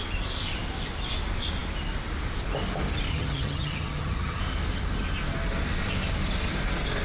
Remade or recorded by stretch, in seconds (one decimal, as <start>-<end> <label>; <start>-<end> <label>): 0.0-3.1 recorded; 3.1-4.4 remade; 4.4-7.0 recorded